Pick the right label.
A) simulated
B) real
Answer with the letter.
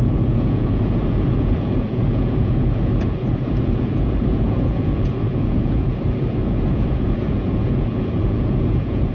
A